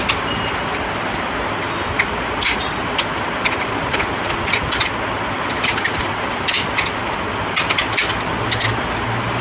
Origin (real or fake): real